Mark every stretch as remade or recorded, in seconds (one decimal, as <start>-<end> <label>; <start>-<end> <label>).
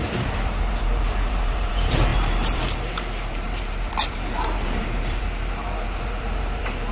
0.0-6.9 remade